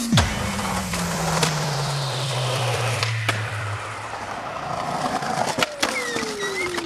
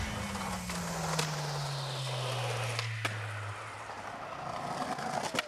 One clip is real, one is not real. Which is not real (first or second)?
first